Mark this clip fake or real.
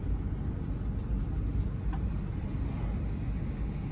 real